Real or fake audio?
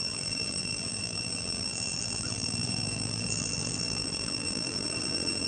fake